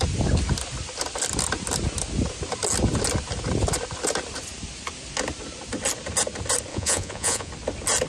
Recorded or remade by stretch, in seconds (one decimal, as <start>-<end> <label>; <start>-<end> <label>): 0.0-6.7 recorded; 6.7-7.5 remade; 7.5-8.1 recorded